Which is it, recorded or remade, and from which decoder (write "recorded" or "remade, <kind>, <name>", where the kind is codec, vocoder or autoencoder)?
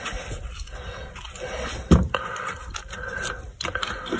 recorded